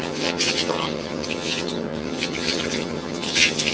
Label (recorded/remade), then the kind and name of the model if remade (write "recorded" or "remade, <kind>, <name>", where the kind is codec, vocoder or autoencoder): remade, vocoder, HiFi-GAN